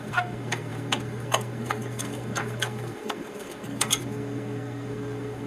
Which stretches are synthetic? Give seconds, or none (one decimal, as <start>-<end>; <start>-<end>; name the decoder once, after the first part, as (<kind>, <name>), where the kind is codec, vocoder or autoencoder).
0.0-5.5 (codec, SNAC)